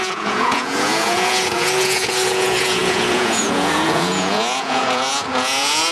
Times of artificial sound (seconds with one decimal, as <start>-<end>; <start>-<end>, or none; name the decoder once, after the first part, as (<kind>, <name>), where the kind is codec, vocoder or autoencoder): 0.0-5.9 (vocoder, Vocos)